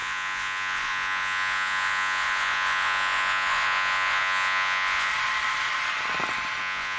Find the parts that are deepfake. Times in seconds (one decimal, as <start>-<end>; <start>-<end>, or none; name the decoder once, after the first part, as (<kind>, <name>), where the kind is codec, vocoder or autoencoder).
0.0-5.1 (vocoder, Vocos); 6.6-7.0